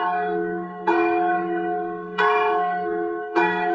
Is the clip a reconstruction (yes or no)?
yes